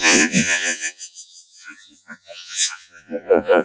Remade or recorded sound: remade